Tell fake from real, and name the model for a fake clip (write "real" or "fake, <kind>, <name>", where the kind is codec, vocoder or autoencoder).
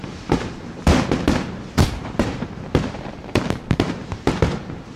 fake, vocoder, BigVGAN v2